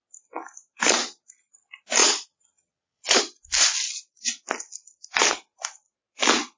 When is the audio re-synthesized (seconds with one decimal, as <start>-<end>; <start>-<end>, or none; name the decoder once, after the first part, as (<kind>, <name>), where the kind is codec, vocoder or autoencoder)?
2.0-3.2 (vocoder, Vocos)